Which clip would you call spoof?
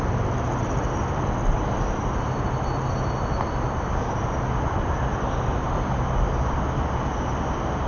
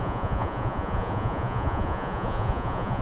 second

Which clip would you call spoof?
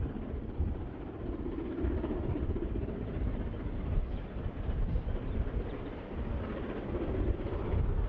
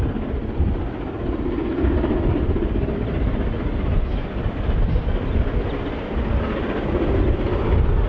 first